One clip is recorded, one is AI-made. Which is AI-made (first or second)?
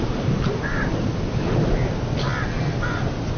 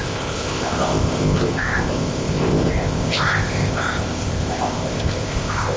second